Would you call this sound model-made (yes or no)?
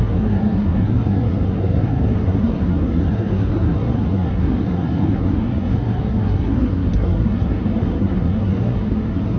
yes